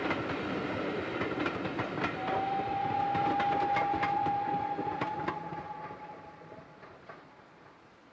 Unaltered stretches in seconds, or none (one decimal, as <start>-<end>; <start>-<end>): 0.0-5.5; 7.1-8.1